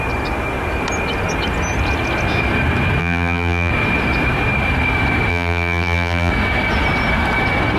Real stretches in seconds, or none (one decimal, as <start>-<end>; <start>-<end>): 0.0-3.0; 3.7-5.3; 6.3-7.8